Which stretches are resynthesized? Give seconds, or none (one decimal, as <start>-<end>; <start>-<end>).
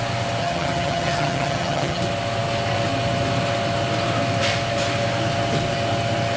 0.4-2.0